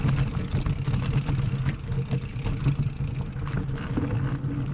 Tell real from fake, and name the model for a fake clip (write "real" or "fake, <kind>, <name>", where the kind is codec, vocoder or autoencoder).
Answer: real